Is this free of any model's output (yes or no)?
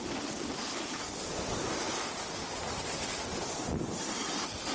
yes